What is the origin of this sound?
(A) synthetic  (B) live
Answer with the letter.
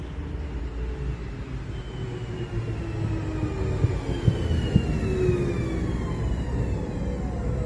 B